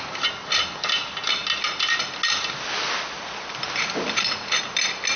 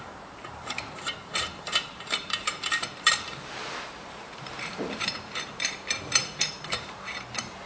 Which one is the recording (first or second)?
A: first